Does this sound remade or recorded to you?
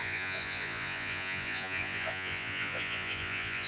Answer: remade